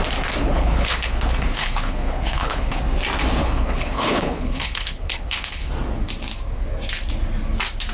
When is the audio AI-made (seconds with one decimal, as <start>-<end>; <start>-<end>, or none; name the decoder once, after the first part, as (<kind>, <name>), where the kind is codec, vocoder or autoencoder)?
0.4-2.8 (codec, HILCodec); 3.4-5.7